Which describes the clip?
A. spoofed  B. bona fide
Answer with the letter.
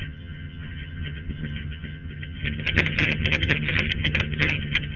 A